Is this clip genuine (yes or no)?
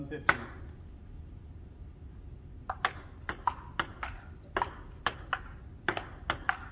yes